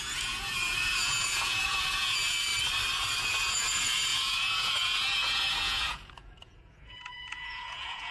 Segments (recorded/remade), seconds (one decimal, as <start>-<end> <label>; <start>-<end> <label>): 0.0-2.5 remade; 2.5-3.2 recorded; 3.2-8.1 remade